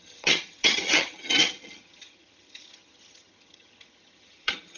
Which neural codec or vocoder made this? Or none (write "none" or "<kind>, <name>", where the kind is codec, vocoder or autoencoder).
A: vocoder, HiFi-GAN